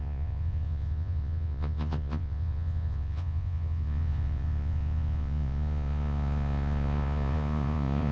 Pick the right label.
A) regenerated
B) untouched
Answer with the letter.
A